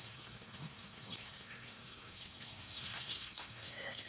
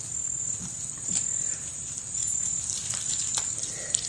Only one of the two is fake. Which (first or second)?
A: first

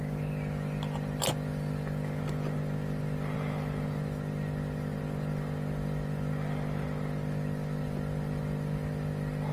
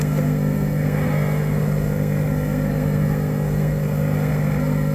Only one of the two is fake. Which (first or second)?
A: second